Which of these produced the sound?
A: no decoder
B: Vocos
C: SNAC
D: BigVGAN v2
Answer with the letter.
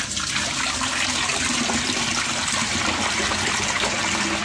A